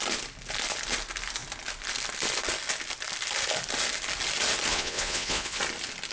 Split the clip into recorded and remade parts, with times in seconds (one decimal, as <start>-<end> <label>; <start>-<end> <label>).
0.0-4.7 recorded; 4.7-5.6 remade; 5.6-6.1 recorded